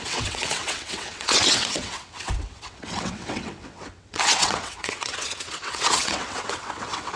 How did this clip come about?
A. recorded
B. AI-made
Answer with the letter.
B